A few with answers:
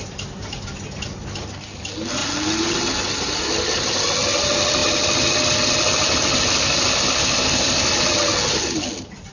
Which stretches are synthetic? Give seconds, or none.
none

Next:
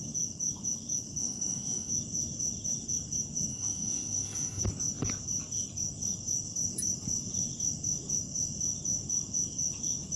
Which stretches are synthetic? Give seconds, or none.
1.2-1.9 (autoencoder, DAC-VAE); 3.5-4.6

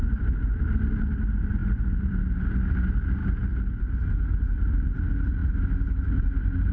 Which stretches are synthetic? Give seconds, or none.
none

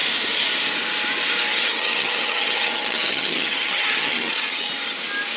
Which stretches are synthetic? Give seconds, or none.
1.5-4.7 (vocoder, HiFi-GAN)

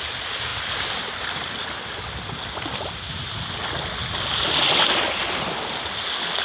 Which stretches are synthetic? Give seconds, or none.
none